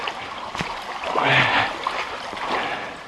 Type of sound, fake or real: real